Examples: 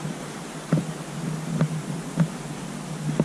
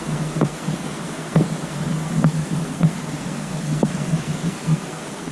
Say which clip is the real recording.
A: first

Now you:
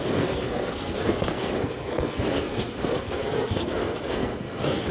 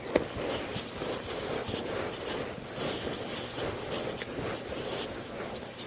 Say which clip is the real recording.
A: second